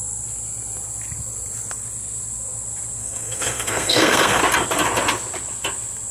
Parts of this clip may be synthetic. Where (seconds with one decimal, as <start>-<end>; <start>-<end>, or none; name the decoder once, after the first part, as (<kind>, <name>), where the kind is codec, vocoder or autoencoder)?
3.0-4.4 (codec, SNAC)